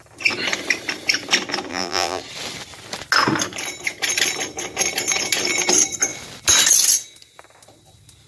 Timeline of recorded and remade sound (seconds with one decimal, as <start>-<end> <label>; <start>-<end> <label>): 0.0-1.7 recorded; 1.7-2.2 remade; 2.2-8.3 recorded